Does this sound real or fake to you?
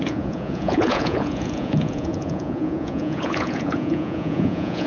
fake